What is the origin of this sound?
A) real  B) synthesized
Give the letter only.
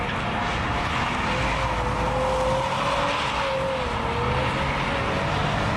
A